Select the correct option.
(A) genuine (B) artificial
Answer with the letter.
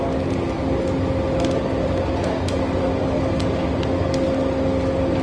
A